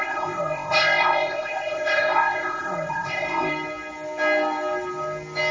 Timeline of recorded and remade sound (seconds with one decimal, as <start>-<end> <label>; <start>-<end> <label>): 0.0-3.5 remade; 3.5-5.5 recorded